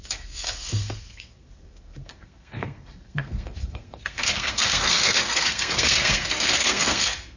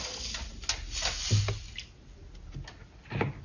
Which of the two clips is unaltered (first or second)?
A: second